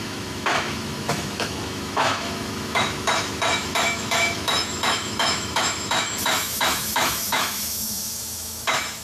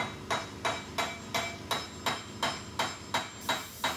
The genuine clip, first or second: second